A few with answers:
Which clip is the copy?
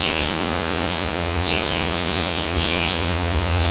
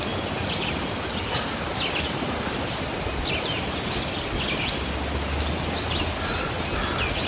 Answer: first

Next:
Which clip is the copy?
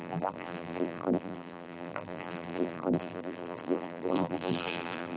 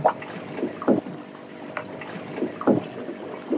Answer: first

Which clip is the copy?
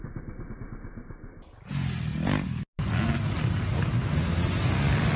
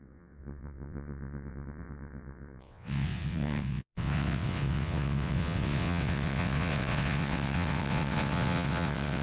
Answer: second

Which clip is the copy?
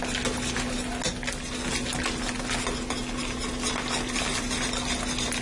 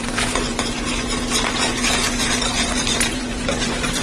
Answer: second